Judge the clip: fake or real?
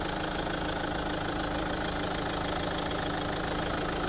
real